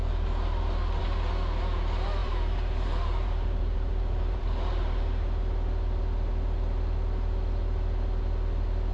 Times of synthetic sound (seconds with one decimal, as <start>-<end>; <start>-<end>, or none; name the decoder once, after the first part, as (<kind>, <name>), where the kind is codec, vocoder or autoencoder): 2.2-5.0 (vocoder, BigVGAN v2)

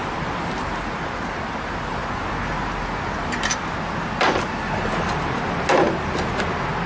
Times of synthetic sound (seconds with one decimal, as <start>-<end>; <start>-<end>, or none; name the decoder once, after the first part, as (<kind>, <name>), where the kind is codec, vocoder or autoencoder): none

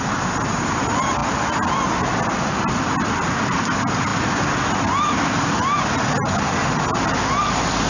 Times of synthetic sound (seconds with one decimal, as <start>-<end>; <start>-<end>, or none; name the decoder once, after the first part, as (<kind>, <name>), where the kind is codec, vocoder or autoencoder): none

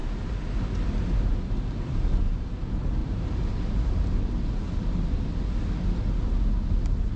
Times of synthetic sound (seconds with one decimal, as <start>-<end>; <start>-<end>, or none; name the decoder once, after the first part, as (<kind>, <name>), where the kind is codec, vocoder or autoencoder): 3.0-3.9 (vocoder, BigVGAN v2)

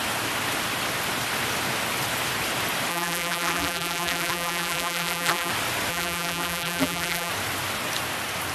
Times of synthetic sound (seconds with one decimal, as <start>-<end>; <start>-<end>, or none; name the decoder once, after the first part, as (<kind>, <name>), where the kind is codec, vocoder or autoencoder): 2.9-5.5 (vocoder, BigVGAN v2); 5.9-7.3

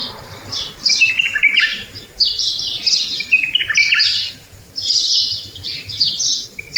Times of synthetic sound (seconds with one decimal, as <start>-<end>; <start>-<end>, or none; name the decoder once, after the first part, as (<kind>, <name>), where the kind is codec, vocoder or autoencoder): 0.0-1.1 (vocoder, BigVGAN v2); 4.0-6.3

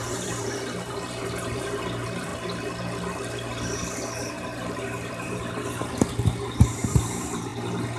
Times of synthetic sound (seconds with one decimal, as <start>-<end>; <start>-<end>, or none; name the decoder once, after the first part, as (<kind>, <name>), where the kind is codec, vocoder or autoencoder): 0.0-2.3 (vocoder, BigVGAN v2); 4.3-5.6; 6.2-7.5

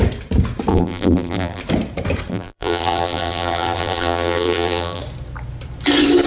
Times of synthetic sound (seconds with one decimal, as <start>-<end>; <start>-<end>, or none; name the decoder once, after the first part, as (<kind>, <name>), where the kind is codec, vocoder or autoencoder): 0.7-1.6 (vocoder, BigVGAN v2); 2.3-5.0